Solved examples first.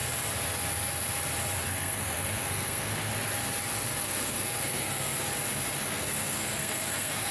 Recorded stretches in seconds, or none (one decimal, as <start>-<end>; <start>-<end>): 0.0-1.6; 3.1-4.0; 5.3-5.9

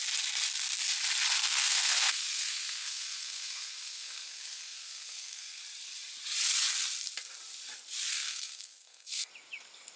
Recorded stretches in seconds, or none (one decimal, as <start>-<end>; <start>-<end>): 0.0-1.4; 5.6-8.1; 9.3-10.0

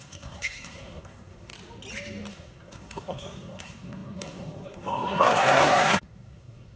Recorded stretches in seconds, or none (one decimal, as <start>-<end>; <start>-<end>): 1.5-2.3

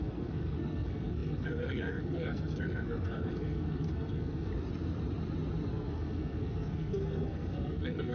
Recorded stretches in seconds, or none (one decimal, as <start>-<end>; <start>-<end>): 4.5-5.7